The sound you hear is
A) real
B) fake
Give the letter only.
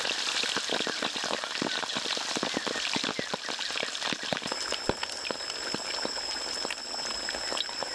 A